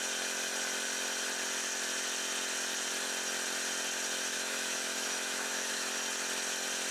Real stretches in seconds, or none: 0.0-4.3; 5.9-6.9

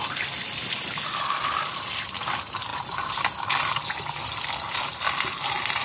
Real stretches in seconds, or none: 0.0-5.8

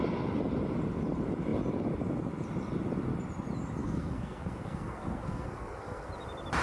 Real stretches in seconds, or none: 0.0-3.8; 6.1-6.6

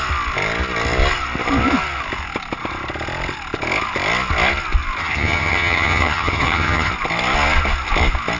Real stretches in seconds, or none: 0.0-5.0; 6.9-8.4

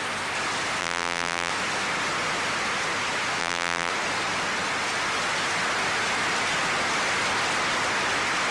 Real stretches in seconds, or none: 0.0-0.8; 1.5-3.4; 3.9-8.5